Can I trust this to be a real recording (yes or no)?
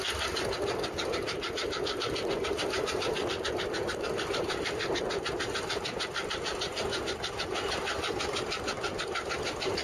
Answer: yes